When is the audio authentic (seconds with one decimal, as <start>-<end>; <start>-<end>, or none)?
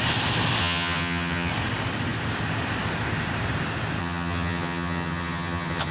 0.0-0.6; 1.5-4.0